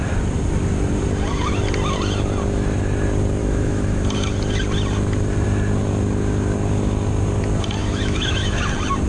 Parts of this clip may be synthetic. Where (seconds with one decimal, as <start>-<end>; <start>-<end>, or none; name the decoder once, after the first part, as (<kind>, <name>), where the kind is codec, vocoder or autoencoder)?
3.4-4.0 (autoencoder, DAC-VAE); 7.8-8.6